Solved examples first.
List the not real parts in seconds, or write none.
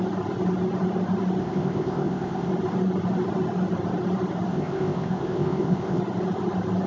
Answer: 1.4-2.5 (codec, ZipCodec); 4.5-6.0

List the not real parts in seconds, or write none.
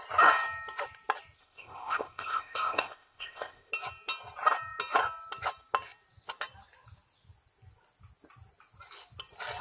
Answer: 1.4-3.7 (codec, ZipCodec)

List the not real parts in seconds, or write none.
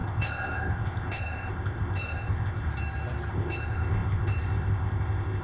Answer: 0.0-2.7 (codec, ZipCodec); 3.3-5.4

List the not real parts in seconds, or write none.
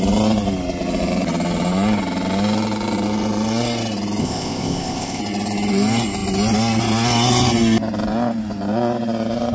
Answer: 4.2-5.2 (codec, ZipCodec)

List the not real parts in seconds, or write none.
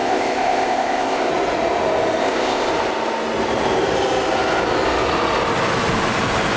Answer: 0.0-1.3 (codec, ZipCodec); 2.2-2.7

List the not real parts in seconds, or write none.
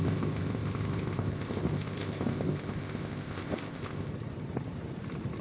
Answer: 0.0-4.1 (codec, ZipCodec)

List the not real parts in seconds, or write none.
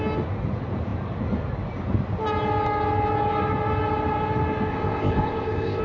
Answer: 4.7-5.8 (codec, ZipCodec)